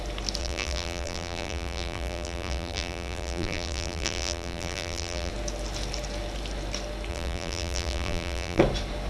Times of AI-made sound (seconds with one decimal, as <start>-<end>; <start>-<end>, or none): 0.4-5.3; 7.1-8.6